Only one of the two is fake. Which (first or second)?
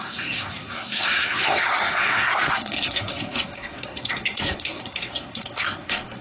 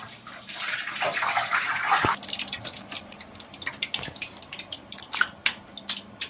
first